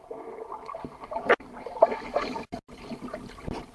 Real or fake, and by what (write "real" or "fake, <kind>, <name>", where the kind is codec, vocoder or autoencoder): real